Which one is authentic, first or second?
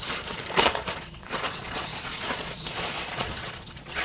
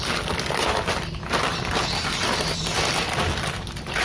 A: second